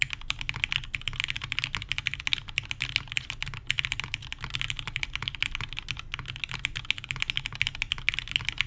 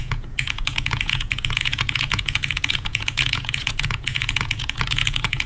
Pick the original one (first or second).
first